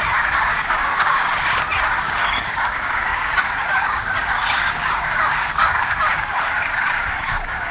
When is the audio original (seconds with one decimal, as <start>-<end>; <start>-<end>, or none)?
1.3-2.0